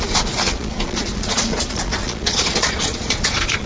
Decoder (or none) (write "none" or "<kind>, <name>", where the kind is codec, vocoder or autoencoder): vocoder, Vocos